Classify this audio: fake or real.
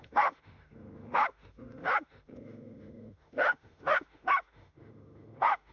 fake